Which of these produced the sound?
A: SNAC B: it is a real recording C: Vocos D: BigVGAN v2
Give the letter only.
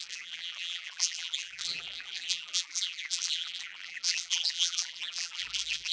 D